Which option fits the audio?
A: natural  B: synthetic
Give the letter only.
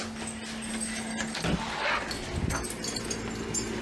A